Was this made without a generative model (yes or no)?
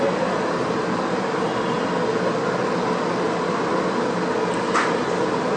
yes